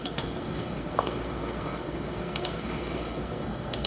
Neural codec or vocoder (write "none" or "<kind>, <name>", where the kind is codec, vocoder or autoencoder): codec, SNAC